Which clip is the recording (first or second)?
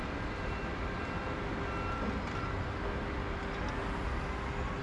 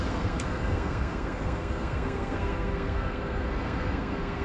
first